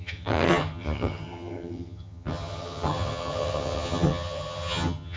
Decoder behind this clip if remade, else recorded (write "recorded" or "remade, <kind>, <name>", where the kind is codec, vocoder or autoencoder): remade, vocoder, HiFi-GAN